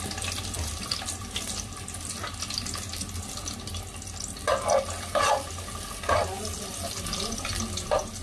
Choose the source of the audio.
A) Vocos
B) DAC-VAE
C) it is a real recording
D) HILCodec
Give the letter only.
C